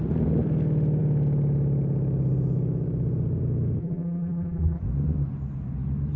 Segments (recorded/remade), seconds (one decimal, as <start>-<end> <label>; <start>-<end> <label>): 0.0-3.8 recorded; 3.8-4.8 remade; 4.8-6.2 recorded